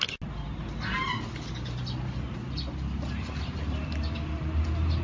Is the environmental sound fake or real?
real